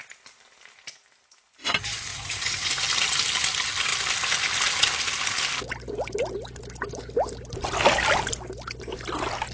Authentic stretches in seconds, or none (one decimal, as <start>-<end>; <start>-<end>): 0.0-2.1; 2.8-9.5